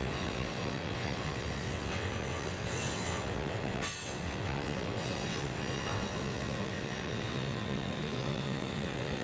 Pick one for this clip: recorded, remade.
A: remade